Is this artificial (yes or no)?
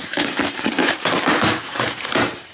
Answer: yes